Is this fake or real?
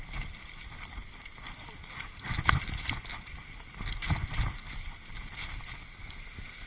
real